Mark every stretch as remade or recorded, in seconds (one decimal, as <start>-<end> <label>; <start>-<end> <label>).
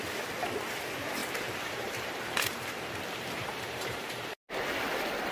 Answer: 0.0-1.2 recorded; 1.2-4.4 remade; 4.4-5.3 recorded